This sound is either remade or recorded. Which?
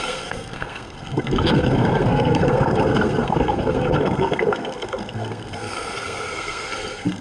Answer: remade